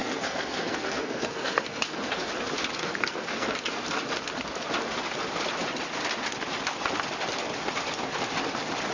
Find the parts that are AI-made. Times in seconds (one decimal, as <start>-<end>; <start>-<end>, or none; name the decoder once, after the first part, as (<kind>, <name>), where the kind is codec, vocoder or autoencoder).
0.0-2.3 (codec, SNAC); 2.8-3.6